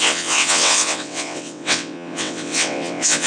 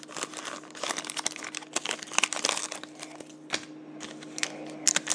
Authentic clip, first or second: second